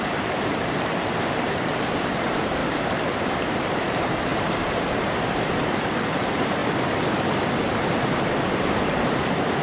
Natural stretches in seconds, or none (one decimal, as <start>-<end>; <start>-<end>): 2.6-3.5; 6.6-7.6